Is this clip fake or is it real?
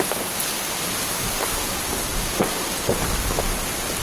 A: fake